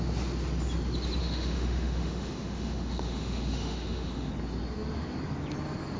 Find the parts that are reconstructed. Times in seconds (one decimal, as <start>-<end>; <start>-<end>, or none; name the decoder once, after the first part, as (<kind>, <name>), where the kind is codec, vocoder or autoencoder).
1.2-4.3 (autoencoder, DAC-VAE)